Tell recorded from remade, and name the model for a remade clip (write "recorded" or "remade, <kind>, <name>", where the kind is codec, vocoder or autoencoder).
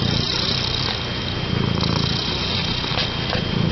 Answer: recorded